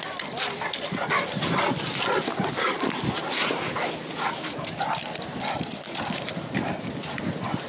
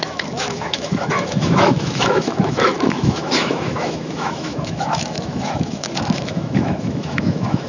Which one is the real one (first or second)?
first